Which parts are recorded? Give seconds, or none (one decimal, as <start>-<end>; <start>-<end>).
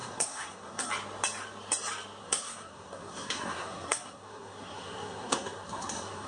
0.9-2.2